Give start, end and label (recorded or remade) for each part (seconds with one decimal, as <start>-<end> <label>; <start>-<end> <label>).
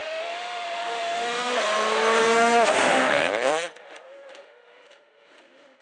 0.0-1.5 remade; 1.5-2.2 recorded; 2.2-5.8 remade